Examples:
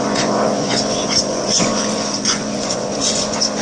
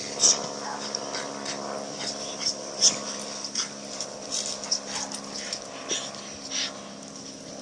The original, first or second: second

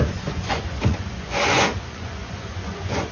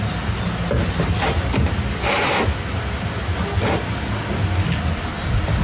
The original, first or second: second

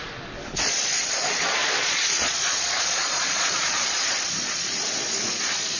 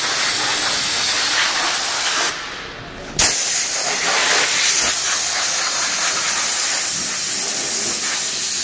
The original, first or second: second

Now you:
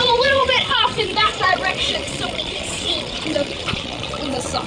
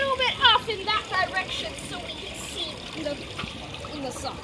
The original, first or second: second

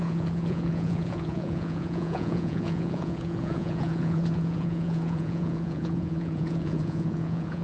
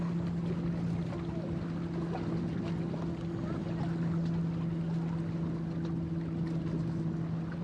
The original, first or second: second